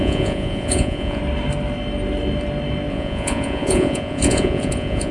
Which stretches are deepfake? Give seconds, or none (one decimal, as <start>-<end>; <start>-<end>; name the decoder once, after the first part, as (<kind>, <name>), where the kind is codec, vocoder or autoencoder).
0.0-1.2 (vocoder, Vocos); 2.9-5.1